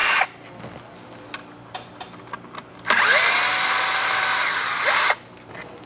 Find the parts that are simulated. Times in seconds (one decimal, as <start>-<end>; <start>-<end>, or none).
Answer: none